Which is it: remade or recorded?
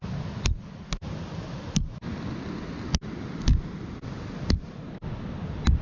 recorded